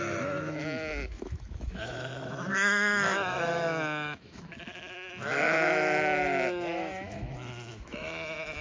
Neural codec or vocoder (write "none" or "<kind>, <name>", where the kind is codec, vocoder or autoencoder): autoencoder, DAC-VAE